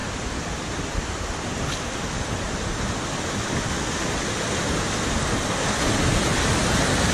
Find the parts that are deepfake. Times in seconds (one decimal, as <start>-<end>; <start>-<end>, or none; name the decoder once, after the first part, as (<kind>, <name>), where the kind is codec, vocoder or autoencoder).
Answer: none